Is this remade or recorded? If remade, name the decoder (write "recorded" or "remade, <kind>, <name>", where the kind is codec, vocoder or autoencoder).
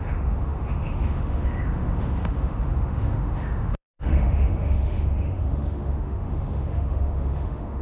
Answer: remade, autoencoder, DAC-VAE